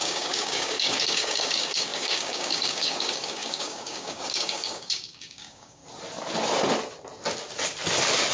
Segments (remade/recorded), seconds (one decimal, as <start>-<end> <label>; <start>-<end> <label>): 0.0-5.8 remade; 5.8-8.3 recorded